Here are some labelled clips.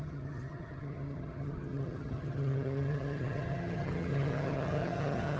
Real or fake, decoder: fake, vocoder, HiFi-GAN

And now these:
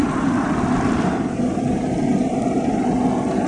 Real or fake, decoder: real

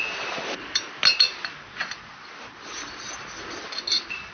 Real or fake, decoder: real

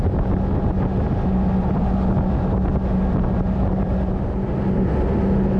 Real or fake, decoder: real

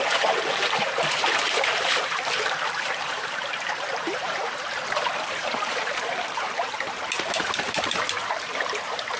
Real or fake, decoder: fake, vocoder, BigVGAN v2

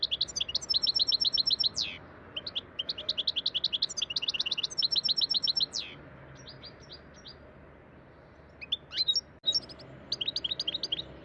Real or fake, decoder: real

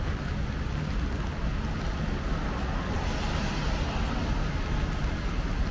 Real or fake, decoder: real